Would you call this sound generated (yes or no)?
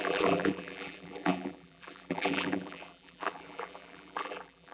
yes